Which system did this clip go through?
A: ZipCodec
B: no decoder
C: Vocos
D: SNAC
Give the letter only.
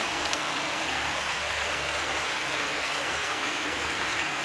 D